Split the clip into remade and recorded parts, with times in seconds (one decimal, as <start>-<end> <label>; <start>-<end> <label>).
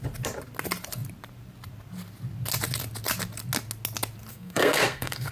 0.0-4.3 recorded; 4.3-5.3 remade